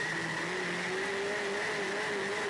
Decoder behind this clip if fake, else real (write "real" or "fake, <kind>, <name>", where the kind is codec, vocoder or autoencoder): real